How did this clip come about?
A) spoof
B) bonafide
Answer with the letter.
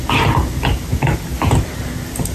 B